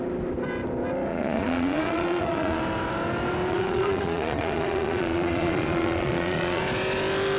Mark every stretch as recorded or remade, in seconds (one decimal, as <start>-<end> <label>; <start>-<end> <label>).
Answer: 0.0-1.1 recorded; 1.1-2.6 remade; 2.6-3.5 recorded; 3.5-6.6 remade; 6.6-7.4 recorded